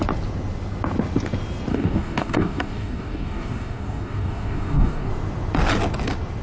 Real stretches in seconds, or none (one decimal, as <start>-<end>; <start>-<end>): 0.0-1.7; 5.1-6.4